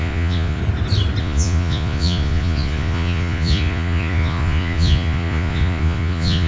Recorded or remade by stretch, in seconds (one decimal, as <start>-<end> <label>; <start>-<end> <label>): 0.0-0.6 remade; 0.6-1.2 recorded; 1.2-6.5 remade